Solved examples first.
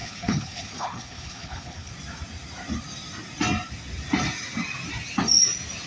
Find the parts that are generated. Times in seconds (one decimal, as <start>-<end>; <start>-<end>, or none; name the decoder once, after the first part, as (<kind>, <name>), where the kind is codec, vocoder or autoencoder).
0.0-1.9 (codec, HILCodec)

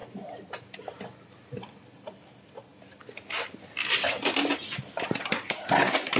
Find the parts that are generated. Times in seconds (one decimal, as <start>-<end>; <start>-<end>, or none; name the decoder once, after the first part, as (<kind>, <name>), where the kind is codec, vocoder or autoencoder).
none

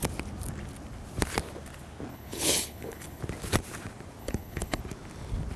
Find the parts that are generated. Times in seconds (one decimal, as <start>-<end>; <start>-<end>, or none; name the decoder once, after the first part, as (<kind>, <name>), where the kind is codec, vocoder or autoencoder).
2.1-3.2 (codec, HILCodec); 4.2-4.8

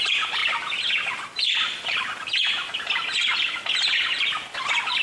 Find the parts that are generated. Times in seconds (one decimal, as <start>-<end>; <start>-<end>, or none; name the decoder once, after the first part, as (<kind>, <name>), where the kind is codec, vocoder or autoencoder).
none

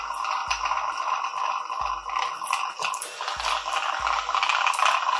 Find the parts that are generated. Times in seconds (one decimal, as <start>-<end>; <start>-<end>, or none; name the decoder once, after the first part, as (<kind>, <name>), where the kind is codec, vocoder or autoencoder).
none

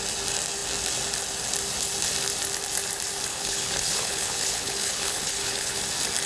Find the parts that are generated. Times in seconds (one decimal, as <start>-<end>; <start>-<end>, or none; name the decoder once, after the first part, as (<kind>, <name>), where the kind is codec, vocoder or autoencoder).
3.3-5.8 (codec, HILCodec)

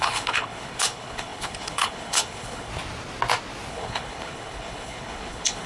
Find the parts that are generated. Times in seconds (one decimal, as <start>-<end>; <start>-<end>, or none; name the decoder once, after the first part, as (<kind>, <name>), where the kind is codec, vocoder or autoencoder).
0.0-2.7 (codec, HILCodec); 3.7-5.7